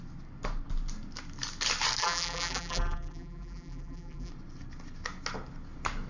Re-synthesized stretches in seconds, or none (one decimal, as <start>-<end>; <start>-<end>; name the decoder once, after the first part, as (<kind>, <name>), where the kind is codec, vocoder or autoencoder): 2.0-4.3 (vocoder, BigVGAN v2)